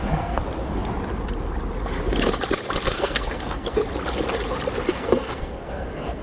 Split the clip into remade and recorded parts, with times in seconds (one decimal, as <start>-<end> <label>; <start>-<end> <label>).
0.0-0.4 remade; 0.4-2.9 recorded; 2.9-3.8 remade; 3.8-4.9 recorded; 4.9-6.2 remade